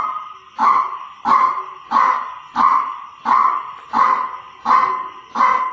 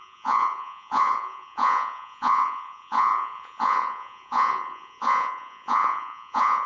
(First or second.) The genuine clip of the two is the first